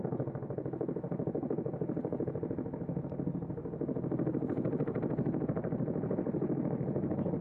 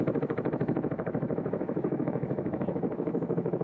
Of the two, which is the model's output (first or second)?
second